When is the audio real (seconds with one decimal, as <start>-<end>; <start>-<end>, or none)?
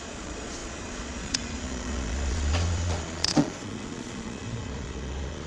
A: none